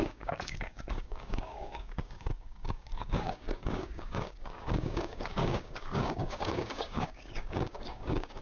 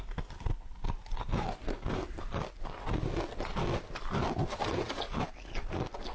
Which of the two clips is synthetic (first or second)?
first